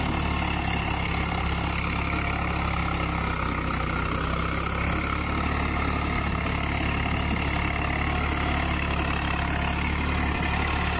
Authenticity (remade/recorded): recorded